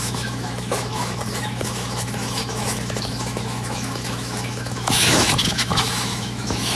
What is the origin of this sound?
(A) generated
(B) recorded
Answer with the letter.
A